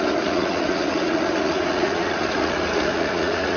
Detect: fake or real fake